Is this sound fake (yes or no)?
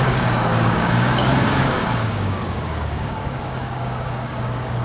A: yes